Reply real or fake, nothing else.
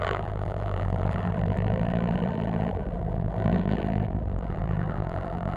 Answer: fake